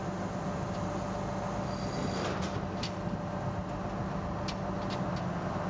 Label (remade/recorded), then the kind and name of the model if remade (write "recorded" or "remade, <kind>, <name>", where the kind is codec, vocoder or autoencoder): recorded